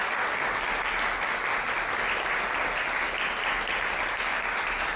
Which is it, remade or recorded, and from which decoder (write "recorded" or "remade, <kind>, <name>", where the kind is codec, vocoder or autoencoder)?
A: recorded